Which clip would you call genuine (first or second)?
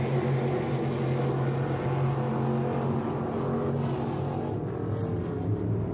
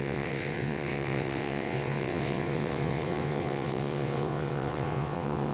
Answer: first